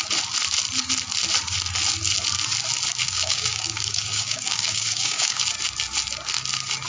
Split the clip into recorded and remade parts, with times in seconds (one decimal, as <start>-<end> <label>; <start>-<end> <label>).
0.0-3.0 recorded; 3.0-5.4 remade; 5.4-6.9 recorded